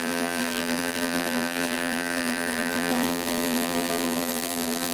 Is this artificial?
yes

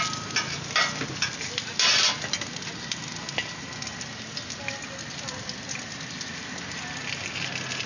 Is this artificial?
no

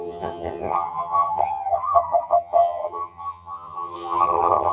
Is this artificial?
yes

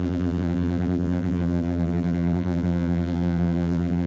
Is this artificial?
yes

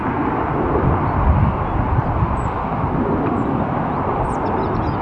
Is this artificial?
no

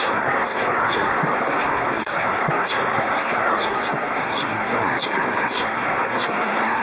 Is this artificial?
yes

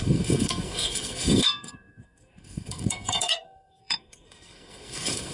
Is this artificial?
yes